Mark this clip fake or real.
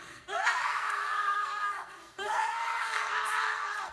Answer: fake